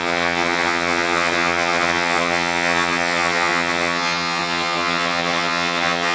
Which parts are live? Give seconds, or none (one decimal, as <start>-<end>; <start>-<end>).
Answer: none